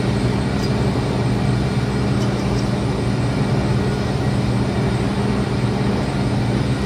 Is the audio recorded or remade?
recorded